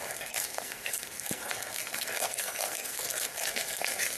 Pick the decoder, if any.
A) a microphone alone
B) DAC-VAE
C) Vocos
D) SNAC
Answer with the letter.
D